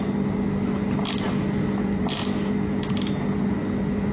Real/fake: real